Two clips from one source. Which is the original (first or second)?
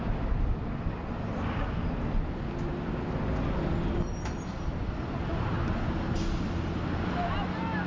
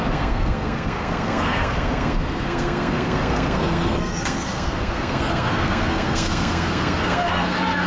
first